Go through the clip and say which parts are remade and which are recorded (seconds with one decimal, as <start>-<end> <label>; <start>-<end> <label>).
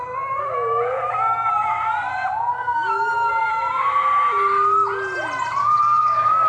0.0-2.5 recorded; 2.5-3.1 remade; 3.1-5.6 recorded; 5.6-6.5 remade